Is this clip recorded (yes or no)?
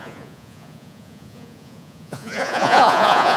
no